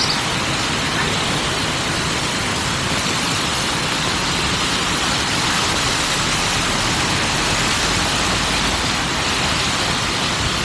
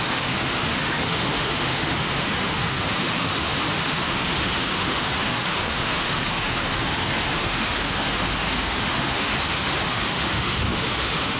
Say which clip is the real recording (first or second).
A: first